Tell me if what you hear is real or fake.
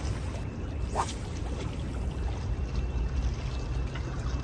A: real